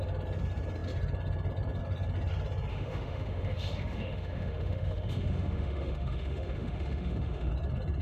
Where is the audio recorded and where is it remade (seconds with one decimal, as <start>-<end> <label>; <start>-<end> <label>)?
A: 0.0-2.7 recorded; 2.7-7.5 remade; 7.5-8.0 recorded